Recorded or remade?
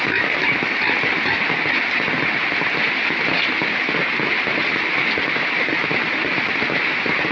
recorded